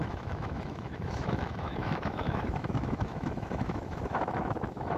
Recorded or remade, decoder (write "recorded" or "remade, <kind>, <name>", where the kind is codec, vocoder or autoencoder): remade, autoencoder, DAC-VAE